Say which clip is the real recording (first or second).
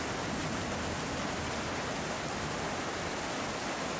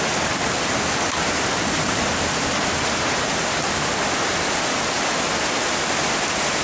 first